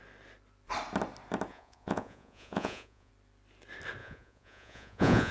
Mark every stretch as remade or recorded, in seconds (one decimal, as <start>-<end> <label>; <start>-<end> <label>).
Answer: 0.0-1.5 recorded; 1.5-3.1 remade; 3.1-4.0 recorded; 4.0-5.3 remade